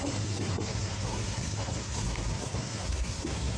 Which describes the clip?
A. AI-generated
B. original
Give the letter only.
A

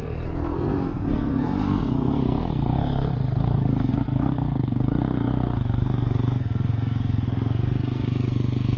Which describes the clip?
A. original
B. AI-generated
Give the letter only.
B